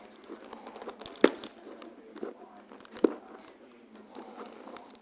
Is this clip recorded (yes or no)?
yes